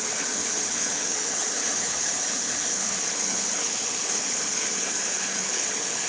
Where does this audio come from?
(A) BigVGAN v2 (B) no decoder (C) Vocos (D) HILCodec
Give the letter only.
D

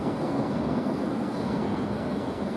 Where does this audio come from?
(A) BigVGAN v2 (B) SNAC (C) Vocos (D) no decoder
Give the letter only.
B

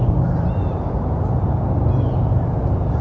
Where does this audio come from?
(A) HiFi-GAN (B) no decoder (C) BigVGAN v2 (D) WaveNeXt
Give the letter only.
C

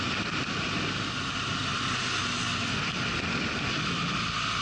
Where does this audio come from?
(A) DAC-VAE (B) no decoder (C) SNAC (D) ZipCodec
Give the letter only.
B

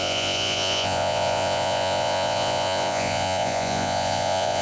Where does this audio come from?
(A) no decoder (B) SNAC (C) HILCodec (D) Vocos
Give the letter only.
D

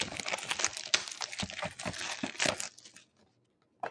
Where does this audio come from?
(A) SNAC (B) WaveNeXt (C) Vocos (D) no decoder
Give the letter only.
D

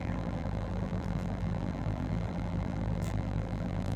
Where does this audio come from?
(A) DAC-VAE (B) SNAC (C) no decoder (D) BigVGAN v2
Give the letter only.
D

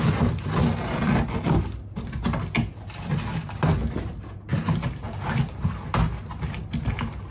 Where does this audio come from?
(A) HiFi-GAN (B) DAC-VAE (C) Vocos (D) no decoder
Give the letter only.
D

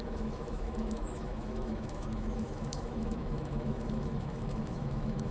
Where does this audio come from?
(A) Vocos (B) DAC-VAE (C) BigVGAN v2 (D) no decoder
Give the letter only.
B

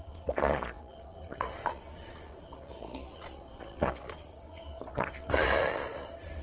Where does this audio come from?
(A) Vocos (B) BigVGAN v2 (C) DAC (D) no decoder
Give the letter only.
A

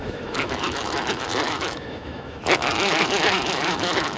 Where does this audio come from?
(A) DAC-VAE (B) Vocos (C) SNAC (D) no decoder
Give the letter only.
A